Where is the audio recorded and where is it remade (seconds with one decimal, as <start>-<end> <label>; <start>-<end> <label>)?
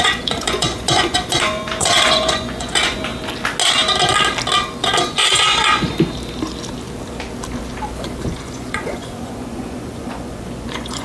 0.0-3.1 remade; 3.1-5.0 recorded; 5.0-5.9 remade; 5.9-8.2 recorded; 8.2-11.0 remade